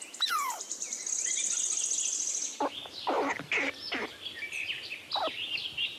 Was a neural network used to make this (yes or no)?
no